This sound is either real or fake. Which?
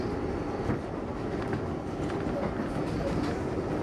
real